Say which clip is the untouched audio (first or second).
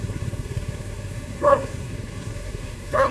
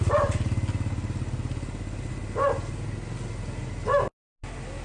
second